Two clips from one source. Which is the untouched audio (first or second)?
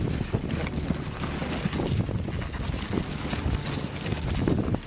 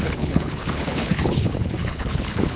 first